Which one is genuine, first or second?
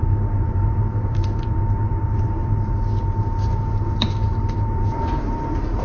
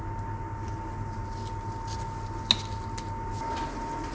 second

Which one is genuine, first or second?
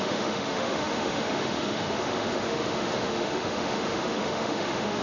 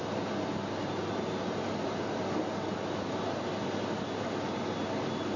second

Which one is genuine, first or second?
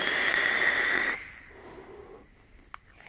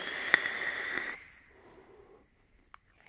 first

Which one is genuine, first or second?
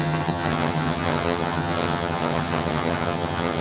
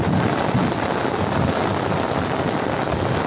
second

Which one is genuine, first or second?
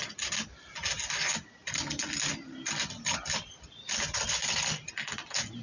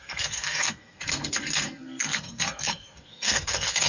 first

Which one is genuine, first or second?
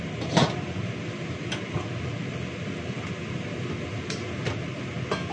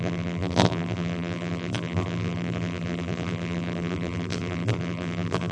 first